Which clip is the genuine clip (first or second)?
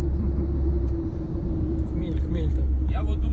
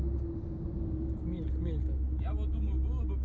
second